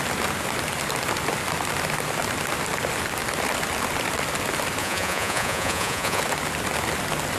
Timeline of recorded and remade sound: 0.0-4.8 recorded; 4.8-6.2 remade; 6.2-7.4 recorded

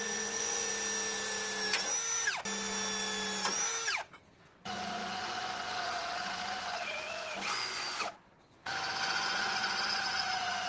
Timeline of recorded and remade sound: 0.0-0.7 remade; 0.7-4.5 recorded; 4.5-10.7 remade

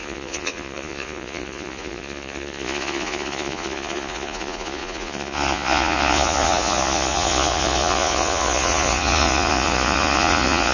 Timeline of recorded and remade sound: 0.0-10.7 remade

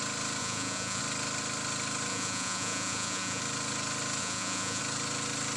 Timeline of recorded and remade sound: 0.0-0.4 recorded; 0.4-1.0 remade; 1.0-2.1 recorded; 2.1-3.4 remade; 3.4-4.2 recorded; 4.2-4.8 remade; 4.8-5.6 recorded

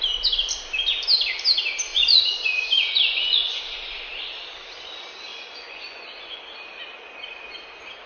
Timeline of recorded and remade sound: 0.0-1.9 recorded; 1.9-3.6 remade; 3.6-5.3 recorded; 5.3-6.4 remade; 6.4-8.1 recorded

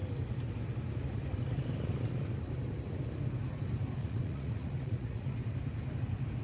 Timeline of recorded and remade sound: 0.0-4.0 recorded; 4.0-5.3 remade; 5.3-6.4 recorded